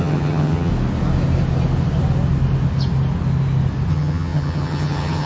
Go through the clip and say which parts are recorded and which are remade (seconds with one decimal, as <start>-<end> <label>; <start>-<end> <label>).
0.0-0.7 remade; 0.7-3.9 recorded; 3.9-5.3 remade